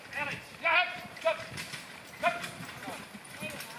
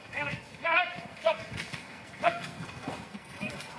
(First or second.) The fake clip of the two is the second